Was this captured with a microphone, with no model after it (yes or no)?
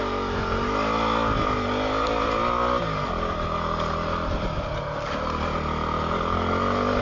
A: yes